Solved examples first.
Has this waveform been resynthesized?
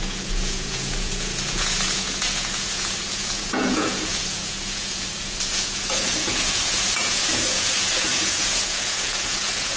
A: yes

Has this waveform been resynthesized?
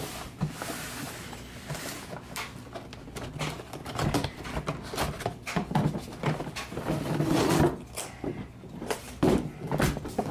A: no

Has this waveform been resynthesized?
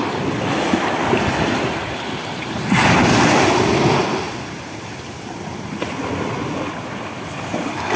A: no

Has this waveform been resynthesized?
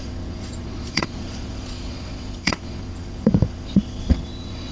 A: yes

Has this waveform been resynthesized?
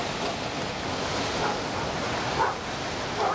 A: no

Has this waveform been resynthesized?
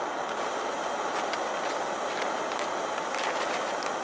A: no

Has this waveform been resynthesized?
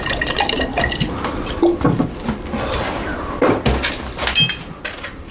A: no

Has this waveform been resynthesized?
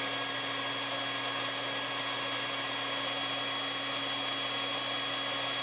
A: no